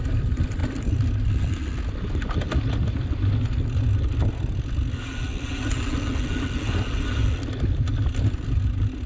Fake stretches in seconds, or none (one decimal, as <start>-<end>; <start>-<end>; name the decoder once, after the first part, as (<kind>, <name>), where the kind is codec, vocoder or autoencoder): none